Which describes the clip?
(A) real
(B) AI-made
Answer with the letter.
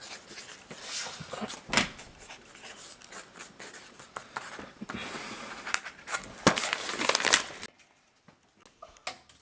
A